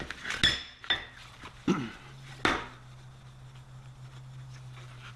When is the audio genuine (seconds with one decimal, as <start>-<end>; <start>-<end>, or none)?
0.0-5.2